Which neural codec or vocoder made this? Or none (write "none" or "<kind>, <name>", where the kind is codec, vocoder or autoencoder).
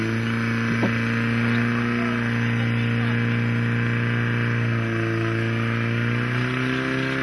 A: none